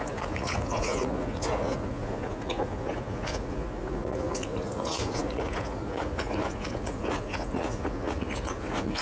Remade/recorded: remade